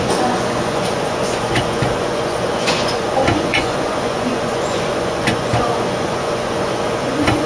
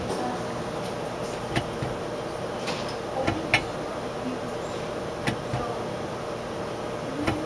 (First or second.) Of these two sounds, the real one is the second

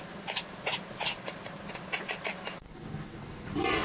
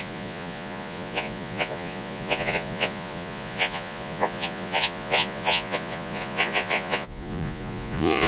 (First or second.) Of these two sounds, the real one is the first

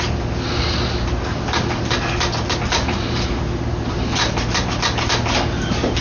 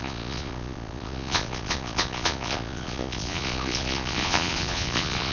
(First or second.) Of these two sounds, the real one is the first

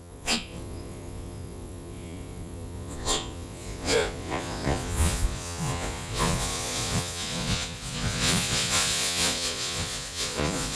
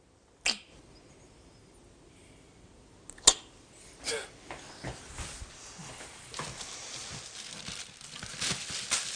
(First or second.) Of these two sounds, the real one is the second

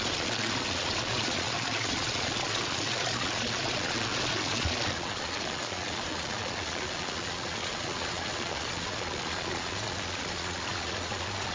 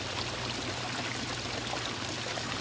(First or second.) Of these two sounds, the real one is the second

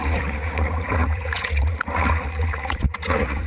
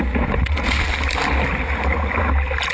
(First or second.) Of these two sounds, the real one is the second